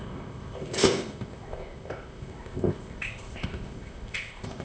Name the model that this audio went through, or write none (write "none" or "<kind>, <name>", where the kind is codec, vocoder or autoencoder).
codec, ZipCodec